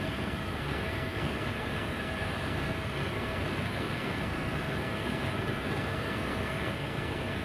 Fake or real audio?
fake